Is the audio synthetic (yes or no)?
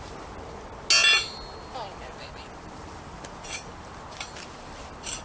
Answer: no